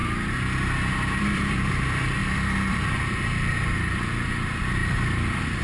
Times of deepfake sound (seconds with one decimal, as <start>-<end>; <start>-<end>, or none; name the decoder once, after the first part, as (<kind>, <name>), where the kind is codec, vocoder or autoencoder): 1.2-2.2 (vocoder, BigVGAN v2); 2.7-5.6